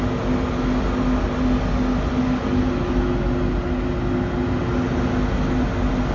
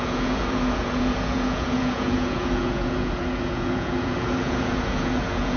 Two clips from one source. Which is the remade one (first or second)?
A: second